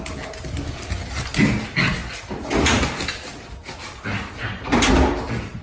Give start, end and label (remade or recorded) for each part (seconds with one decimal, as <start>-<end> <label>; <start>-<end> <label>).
0.0-5.6 recorded